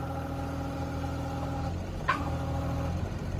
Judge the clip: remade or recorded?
recorded